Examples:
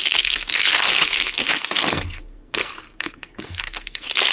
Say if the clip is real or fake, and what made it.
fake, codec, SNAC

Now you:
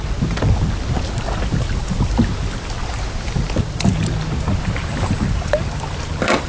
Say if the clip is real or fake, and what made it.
real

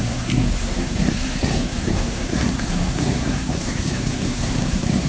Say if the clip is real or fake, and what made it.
fake, codec, SNAC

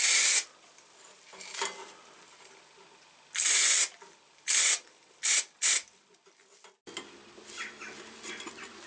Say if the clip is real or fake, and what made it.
real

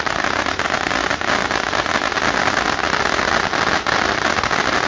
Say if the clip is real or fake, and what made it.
real